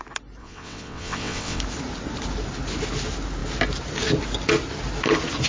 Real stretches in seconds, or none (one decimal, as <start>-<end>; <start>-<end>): 0.0-0.4; 1.6-5.5